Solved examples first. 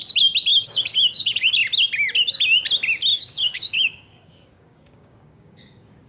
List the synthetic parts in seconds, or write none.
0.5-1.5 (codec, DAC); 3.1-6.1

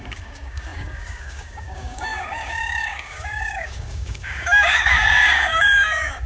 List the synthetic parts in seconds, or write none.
0.0-6.3 (codec, DAC)

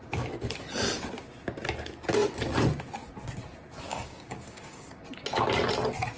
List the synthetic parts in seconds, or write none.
3.9-5.0 (codec, DAC)

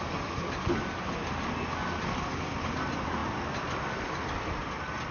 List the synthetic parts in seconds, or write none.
none

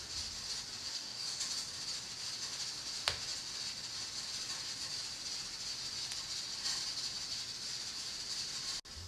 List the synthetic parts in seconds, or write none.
0.9-1.4 (codec, DAC)